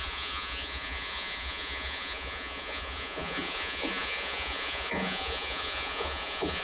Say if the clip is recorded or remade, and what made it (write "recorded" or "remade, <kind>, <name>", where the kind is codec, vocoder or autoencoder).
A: remade, vocoder, Vocos